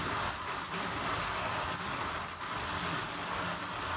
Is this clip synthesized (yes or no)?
no